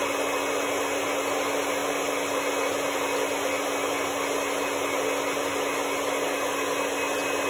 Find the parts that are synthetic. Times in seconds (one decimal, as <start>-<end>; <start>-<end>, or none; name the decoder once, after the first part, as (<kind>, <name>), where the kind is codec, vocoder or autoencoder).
none